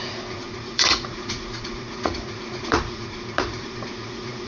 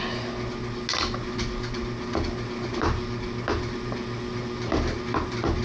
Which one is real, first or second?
second